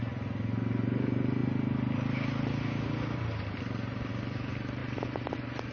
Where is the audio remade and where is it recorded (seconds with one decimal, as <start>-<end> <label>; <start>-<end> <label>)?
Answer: 0.0-5.7 recorded